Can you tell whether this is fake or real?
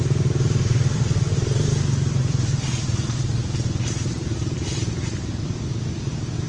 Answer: fake